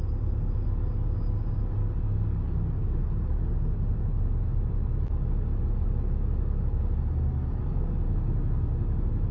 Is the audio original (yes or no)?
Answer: yes